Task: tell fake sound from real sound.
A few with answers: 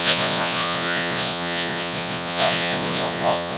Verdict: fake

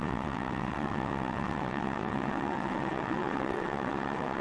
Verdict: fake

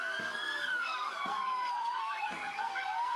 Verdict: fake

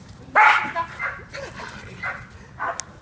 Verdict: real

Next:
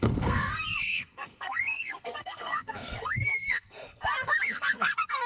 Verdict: fake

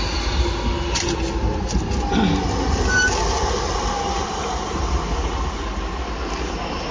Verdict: real